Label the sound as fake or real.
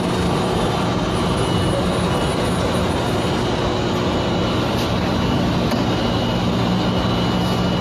real